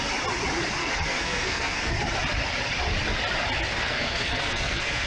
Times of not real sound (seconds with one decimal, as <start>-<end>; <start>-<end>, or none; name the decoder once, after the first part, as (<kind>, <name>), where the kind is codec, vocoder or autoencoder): 0.8-1.9 (codec, SNAC); 3.7-5.1